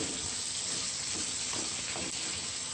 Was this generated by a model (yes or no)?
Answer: no